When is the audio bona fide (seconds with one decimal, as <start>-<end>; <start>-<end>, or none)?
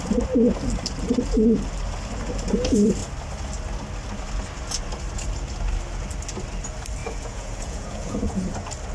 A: 0.0-7.0; 8.5-8.9